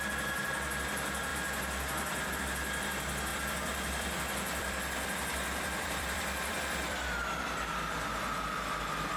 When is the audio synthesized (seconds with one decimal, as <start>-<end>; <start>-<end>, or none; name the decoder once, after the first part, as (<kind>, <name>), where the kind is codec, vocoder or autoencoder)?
3.3-7.4 (vocoder, BigVGAN v2)